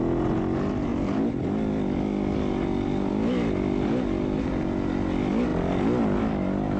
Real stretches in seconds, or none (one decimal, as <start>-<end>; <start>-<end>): 0.0-6.8